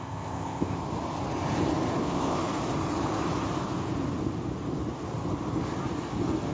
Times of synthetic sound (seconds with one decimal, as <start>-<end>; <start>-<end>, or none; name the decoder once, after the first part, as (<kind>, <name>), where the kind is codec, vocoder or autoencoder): 0.0-0.8 (codec, ZipCodec); 2.0-2.4